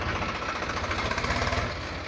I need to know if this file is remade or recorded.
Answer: recorded